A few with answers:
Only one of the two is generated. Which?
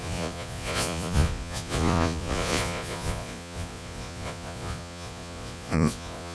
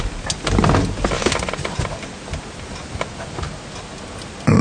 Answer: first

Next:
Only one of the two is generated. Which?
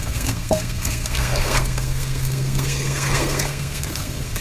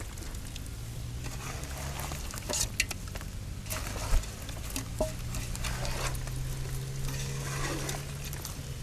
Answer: first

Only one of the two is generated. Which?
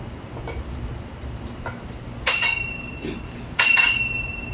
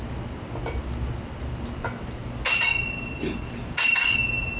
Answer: first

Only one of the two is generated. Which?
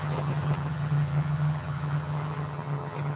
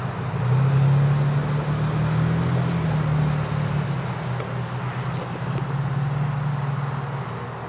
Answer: first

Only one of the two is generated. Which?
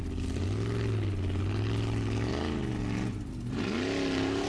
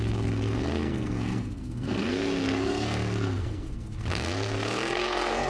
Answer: second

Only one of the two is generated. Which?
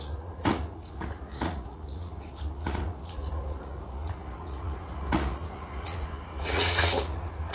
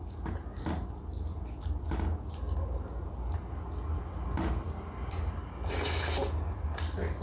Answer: first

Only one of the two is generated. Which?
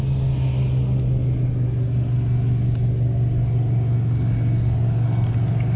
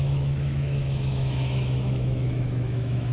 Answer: second